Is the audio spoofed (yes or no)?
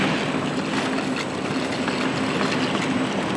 no